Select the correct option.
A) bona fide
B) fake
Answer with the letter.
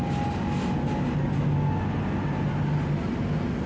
A